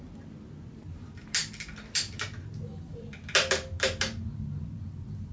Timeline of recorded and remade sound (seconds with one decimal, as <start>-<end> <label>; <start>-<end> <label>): 0.0-5.3 recorded